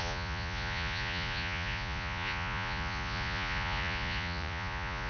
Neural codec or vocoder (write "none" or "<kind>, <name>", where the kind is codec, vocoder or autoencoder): vocoder, Vocos